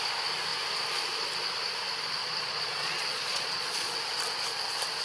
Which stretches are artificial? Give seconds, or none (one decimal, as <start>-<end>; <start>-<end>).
2.2-3.9